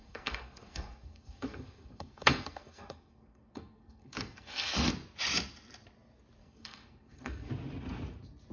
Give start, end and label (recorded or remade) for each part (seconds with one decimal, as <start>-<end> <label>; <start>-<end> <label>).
0.0-4.9 remade; 4.9-6.4 recorded; 6.4-7.5 remade; 7.5-8.5 recorded